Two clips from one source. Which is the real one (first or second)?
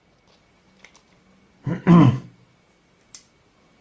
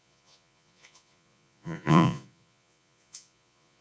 first